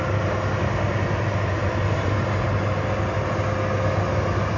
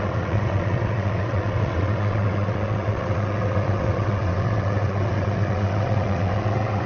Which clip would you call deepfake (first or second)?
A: second